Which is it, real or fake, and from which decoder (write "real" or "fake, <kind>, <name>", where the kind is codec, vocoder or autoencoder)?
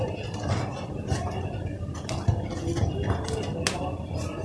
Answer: real